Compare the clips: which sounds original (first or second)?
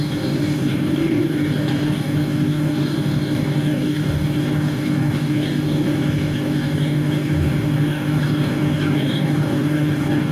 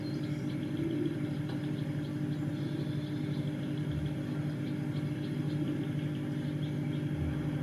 second